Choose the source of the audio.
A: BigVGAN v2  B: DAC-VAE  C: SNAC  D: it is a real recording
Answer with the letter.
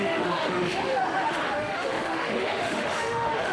B